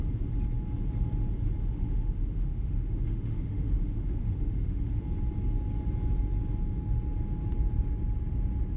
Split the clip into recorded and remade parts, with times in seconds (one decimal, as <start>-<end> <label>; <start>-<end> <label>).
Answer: 0.0-1.6 recorded; 1.6-5.0 remade; 5.0-8.8 recorded